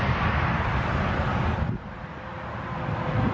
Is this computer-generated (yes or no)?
no